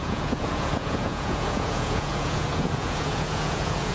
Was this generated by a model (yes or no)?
yes